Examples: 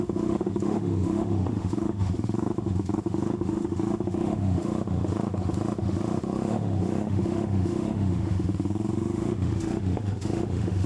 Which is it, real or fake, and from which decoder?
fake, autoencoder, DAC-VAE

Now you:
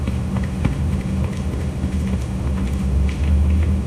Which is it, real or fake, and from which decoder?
fake, autoencoder, DAC-VAE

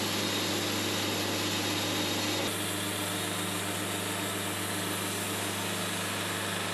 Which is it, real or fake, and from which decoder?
real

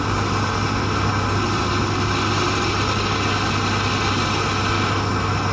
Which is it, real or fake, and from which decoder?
real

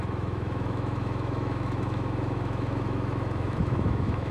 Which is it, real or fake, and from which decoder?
fake, autoencoder, DAC-VAE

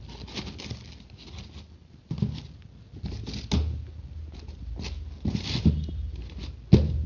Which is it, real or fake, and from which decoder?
real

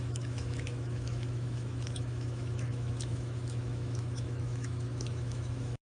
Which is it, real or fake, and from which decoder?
fake, autoencoder, DAC-VAE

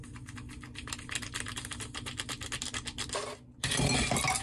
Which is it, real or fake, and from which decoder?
real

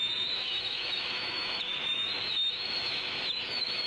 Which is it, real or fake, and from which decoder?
fake, autoencoder, DAC-VAE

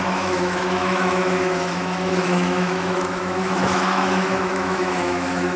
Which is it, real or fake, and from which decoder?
fake, autoencoder, DAC-VAE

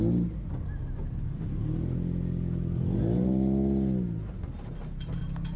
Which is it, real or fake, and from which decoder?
real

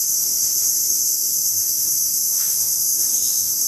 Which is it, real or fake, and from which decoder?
fake, autoencoder, DAC-VAE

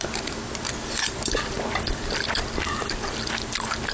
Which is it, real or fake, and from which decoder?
real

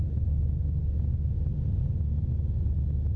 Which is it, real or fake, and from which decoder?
real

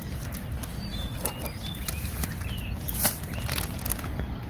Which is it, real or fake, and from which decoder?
real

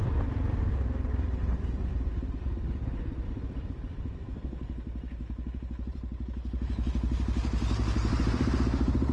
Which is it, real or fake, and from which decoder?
real